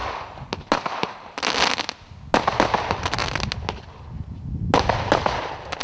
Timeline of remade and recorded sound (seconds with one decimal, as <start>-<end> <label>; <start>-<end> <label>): 0.0-5.8 recorded

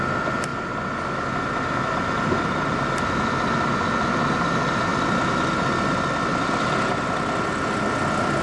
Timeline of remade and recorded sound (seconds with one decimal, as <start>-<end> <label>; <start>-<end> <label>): 0.0-8.4 recorded